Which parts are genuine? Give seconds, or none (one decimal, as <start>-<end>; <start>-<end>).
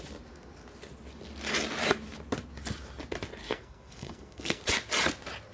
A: 0.0-3.4; 4.6-5.5